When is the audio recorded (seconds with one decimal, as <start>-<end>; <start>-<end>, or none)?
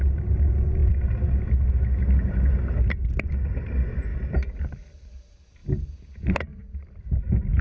0.0-5.6